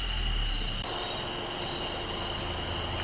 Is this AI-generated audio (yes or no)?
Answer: no